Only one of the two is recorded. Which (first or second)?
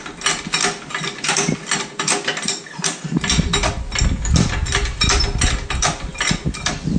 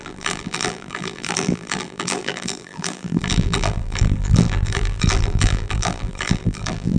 first